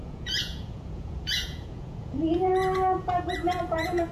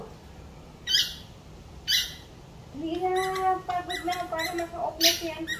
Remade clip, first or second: first